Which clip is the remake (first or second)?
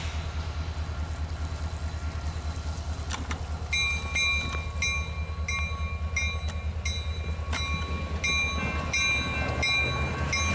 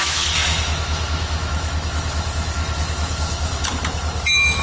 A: second